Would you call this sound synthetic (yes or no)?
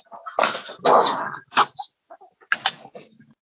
no